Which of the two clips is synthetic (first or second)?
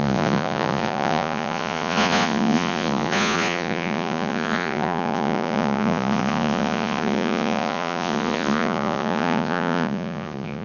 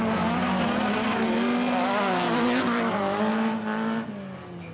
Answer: first